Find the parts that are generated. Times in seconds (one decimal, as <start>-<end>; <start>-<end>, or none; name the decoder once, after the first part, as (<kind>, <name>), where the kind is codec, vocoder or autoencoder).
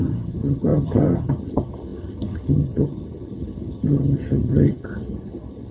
0.0-5.7 (vocoder, HiFi-GAN)